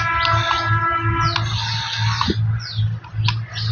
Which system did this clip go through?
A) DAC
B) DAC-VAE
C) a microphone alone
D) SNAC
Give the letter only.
C